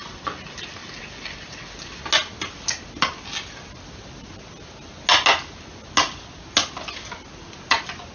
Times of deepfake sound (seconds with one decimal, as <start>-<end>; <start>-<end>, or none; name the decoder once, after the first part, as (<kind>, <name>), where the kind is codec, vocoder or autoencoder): none